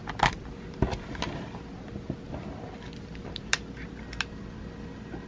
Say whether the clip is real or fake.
real